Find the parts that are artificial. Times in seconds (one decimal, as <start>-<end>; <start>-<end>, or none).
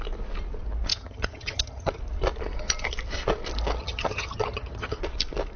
0.9-2.0; 3.8-5.0